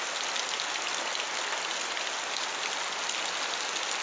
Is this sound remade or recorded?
recorded